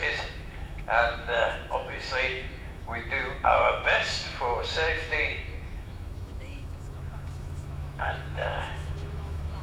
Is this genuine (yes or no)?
no